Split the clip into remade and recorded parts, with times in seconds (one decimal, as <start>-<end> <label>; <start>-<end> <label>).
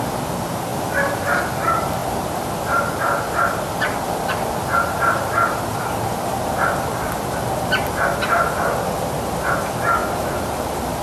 0.0-6.3 recorded; 6.3-6.9 remade; 6.9-10.0 recorded; 10.0-11.0 remade